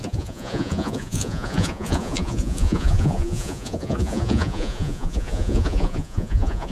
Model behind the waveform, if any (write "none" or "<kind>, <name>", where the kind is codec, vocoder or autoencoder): vocoder, Vocos